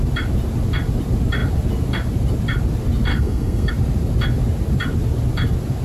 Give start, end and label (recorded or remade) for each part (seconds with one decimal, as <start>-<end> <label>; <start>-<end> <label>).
0.0-3.1 recorded; 3.1-3.7 remade; 3.7-5.8 recorded